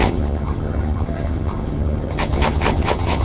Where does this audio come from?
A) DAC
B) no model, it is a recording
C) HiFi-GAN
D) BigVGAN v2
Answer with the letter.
C